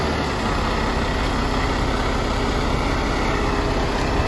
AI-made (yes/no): no